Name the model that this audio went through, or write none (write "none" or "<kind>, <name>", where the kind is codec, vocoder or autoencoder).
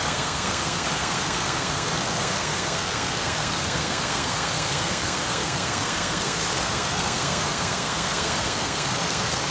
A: codec, SNAC